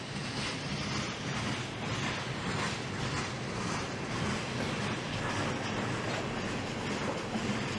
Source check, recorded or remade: recorded